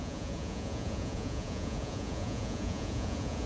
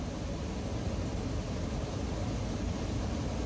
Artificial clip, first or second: first